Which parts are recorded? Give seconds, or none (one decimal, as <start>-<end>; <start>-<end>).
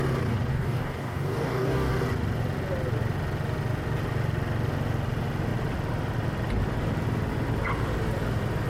0.0-0.5; 1.9-8.7